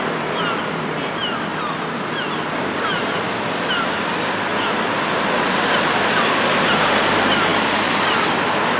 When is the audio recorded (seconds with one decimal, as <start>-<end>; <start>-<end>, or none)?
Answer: 1.5-2.6